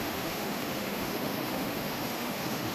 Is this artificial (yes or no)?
yes